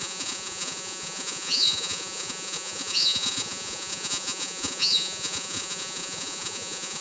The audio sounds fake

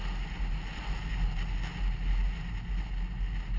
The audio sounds real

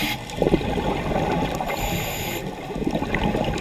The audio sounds real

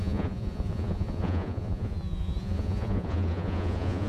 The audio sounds fake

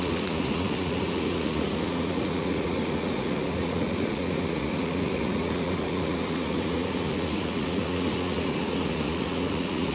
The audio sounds fake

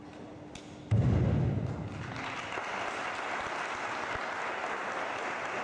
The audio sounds real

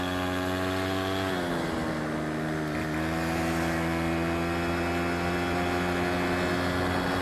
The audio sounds real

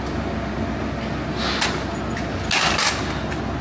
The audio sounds real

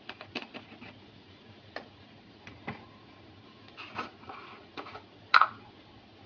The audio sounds fake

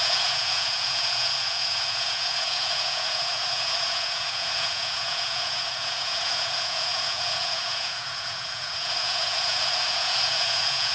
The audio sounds fake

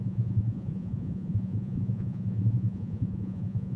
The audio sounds fake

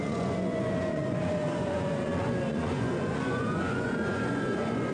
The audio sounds fake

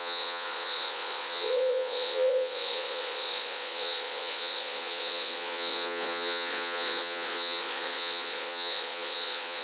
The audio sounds fake